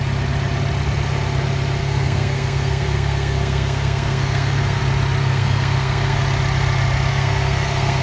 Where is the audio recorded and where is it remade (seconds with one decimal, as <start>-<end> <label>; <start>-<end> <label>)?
0.0-1.8 recorded; 1.8-4.8 remade; 4.8-5.2 recorded; 5.2-6.2 remade; 6.2-7.1 recorded; 7.1-8.0 remade